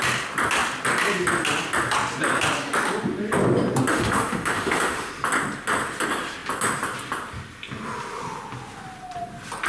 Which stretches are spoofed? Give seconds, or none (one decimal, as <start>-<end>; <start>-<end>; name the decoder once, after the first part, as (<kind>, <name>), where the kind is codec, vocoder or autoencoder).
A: 3.9-5.1 (autoencoder, DAC-VAE)